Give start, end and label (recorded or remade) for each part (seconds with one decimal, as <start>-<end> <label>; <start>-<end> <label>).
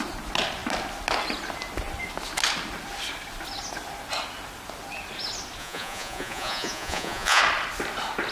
0.0-5.6 recorded; 5.6-7.4 remade; 7.4-8.3 recorded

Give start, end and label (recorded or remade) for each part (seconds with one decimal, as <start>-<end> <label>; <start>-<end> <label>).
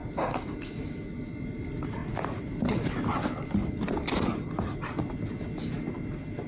0.0-1.0 remade; 1.0-6.5 recorded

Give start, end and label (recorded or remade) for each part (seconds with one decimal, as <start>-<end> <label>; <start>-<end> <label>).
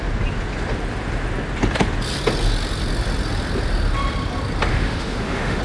0.0-4.7 recorded; 4.7-5.6 remade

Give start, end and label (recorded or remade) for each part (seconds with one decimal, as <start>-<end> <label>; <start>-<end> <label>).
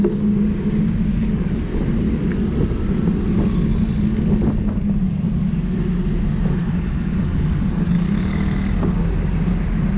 0.0-1.1 recorded; 1.1-1.6 remade; 1.6-6.6 recorded; 6.6-8.7 remade; 8.7-10.0 recorded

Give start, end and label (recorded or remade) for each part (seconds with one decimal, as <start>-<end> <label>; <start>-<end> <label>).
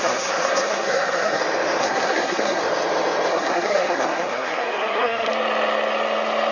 0.0-1.4 remade; 1.4-1.8 recorded; 1.8-2.6 remade; 2.6-3.3 recorded; 3.3-5.3 remade; 5.3-6.5 recorded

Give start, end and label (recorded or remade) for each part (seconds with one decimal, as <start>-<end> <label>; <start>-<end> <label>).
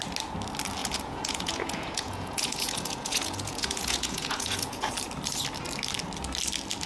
0.0-0.8 recorded; 0.8-4.9 remade; 4.9-6.9 recorded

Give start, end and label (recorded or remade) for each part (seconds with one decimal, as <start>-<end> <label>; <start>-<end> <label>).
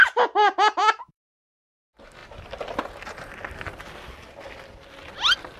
0.0-0.8 recorded; 0.8-1.4 remade; 1.4-5.6 recorded